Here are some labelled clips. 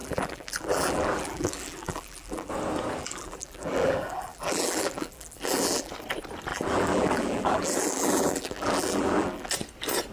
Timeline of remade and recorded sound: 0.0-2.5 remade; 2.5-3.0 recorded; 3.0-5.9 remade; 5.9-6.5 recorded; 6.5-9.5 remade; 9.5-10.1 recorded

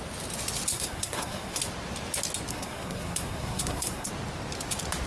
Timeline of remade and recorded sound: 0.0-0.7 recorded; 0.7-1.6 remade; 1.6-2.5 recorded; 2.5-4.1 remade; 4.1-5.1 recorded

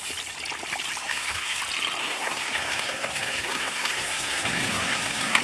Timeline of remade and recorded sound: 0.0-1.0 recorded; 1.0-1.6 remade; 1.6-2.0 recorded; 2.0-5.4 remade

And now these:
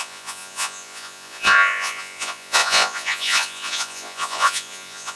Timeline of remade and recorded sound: 0.0-5.2 remade

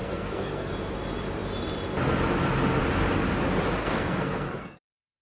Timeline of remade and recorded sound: 0.0-0.7 remade; 0.7-3.8 recorded; 3.8-5.2 remade

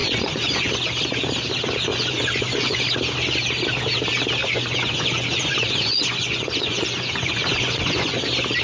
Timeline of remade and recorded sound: 0.0-0.7 remade; 0.7-1.9 recorded; 1.9-2.8 remade; 2.8-4.4 recorded; 4.4-8.2 remade; 8.2-8.6 recorded

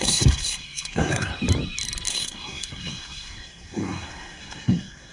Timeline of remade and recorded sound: 0.0-1.3 remade; 1.3-2.1 recorded; 2.1-5.1 remade

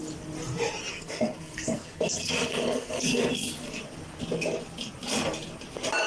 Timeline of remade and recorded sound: 0.0-0.9 recorded; 0.9-3.8 remade; 3.8-6.1 recorded